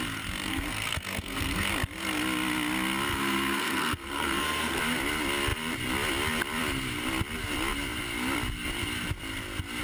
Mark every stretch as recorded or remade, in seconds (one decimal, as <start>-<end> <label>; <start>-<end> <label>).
0.0-0.5 recorded; 0.5-1.7 remade; 1.7-3.1 recorded; 3.1-4.8 remade; 4.8-9.8 recorded